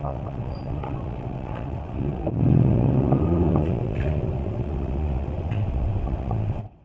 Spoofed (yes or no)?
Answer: yes